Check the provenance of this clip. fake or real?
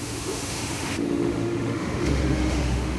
fake